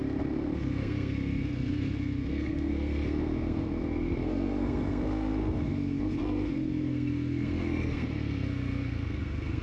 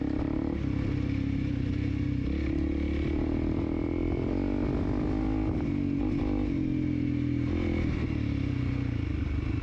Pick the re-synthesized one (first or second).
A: first